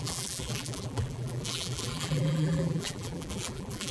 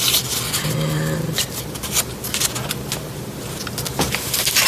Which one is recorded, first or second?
second